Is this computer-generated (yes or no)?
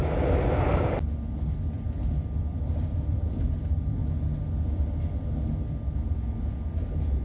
no